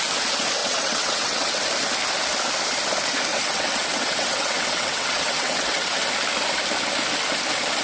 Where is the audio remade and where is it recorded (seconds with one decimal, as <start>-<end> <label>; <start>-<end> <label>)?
0.0-0.6 recorded; 0.6-1.6 remade; 1.6-3.3 recorded; 3.3-6.0 remade; 6.0-7.8 recorded